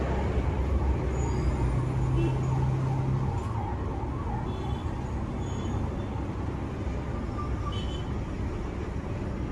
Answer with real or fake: real